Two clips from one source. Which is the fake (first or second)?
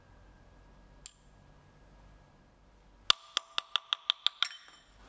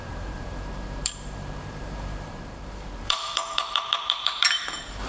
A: second